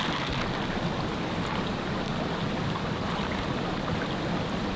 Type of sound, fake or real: real